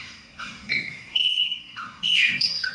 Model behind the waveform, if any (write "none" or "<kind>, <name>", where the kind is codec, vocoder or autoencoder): codec, SNAC